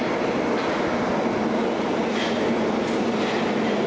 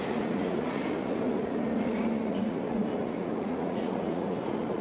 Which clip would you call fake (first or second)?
second